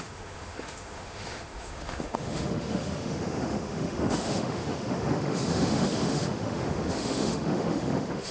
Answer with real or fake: fake